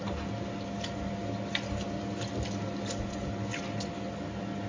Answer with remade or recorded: recorded